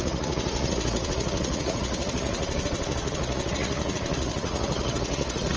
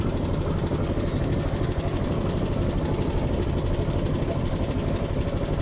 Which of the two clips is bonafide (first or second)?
second